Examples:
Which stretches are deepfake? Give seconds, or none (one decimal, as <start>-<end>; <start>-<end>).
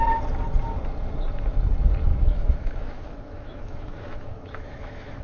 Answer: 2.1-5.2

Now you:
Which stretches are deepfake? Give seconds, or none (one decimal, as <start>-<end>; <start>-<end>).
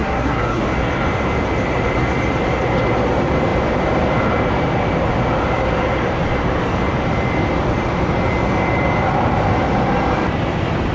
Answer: 0.0-0.6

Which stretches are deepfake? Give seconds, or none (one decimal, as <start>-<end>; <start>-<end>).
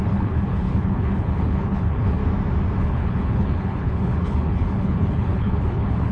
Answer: 0.0-2.2; 2.8-6.1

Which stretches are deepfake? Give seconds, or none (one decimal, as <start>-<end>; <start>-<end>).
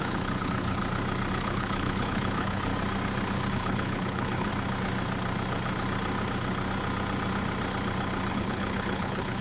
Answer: 0.0-0.8; 1.3-2.7; 3.5-4.5; 8.3-9.4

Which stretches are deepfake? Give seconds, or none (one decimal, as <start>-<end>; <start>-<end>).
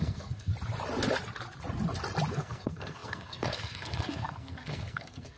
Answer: 0.0-0.5; 2.3-5.4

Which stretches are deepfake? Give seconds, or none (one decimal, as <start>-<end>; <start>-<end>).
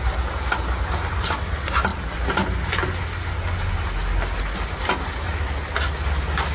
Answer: none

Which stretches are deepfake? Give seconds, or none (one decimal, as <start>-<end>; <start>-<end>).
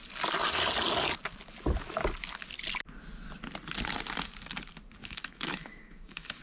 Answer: 5.0-6.4